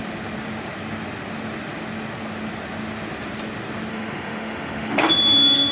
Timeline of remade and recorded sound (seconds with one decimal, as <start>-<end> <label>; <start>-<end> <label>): 0.0-3.9 recorded; 3.9-5.1 remade; 5.1-5.7 recorded